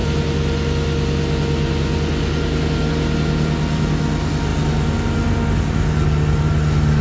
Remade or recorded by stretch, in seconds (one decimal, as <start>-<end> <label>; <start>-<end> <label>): 0.0-7.0 recorded